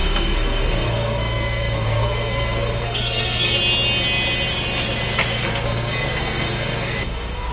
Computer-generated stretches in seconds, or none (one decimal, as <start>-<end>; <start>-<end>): 0.0-3.6; 5.3-7.5